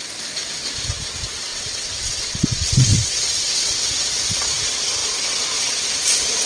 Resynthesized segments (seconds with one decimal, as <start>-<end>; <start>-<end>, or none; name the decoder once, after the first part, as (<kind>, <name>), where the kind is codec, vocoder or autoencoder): 1.5-3.9 (vocoder, WaveNeXt)

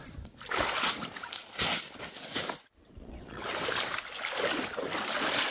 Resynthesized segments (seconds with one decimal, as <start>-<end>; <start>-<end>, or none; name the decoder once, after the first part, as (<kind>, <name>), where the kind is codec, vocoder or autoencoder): 2.8-3.5 (vocoder, WaveNeXt)

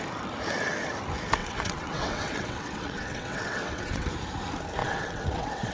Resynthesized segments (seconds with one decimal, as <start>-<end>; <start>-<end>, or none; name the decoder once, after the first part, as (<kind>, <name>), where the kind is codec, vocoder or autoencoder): 1.4-4.1 (vocoder, WaveNeXt); 4.8-5.7

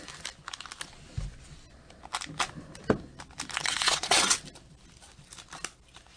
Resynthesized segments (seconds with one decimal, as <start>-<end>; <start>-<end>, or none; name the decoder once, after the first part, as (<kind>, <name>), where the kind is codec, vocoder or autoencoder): 3.6-4.4 (vocoder, WaveNeXt)

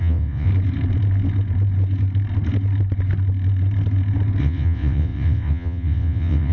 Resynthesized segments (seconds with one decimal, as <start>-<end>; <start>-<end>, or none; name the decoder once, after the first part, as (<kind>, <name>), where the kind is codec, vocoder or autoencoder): 0.0-0.5 (vocoder, WaveNeXt); 4.4-6.5

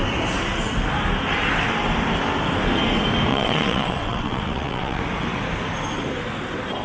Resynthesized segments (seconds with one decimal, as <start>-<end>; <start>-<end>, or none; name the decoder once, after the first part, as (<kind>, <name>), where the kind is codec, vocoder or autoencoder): 3.3-5.0 (vocoder, WaveNeXt)

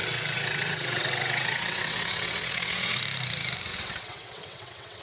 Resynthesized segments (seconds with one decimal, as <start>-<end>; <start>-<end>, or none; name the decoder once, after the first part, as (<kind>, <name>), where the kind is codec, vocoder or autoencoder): 0.0-3.0 (vocoder, WaveNeXt); 3.7-5.0

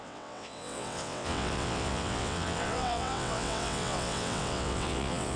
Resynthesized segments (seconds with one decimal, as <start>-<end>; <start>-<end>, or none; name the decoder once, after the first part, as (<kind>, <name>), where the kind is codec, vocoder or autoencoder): 0.0-5.4 (vocoder, WaveNeXt)